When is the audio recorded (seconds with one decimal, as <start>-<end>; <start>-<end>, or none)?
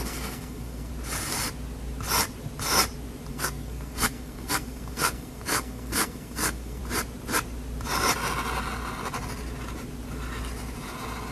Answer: 0.9-3.3; 6.8-11.3